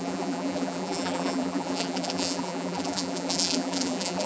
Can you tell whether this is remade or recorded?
remade